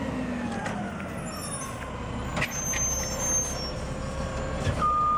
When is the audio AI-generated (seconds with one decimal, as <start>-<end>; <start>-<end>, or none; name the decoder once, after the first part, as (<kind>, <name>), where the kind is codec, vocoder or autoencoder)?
none